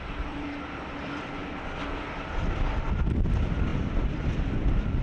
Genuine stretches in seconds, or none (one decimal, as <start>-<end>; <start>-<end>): 1.4-1.9